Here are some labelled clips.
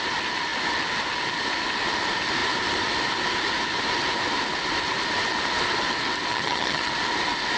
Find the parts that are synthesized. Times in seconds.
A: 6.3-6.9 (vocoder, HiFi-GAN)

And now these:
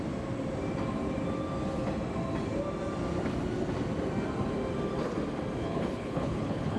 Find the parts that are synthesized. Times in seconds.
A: 5.6-6.8 (codec, HILCodec)

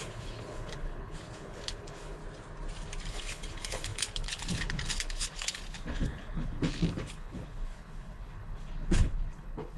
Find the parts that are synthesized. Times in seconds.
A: 0.0-2.2 (codec, HILCodec); 3.1-9.8